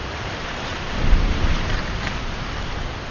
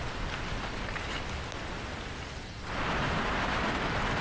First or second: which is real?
second